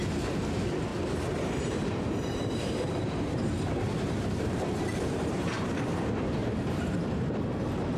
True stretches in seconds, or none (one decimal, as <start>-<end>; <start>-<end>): 0.0-0.9; 5.7-6.4; 7.2-8.0